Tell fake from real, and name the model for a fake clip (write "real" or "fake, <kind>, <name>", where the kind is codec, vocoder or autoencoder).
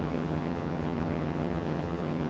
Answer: fake, vocoder, HiFi-GAN